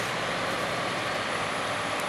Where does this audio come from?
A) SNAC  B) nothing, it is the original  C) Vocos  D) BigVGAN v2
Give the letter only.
B